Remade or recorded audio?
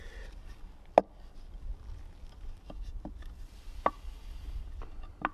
recorded